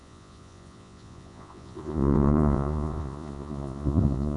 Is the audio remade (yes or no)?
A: yes